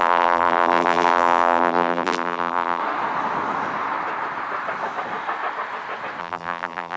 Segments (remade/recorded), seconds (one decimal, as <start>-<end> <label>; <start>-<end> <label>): 0.0-2.8 remade; 2.8-6.2 recorded; 6.2-7.0 remade